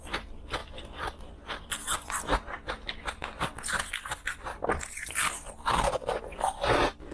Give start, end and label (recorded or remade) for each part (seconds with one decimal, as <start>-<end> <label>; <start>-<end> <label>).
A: 0.0-7.1 recorded